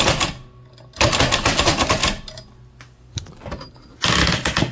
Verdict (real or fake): real